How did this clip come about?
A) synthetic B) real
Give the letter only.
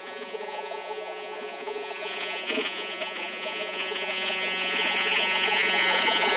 A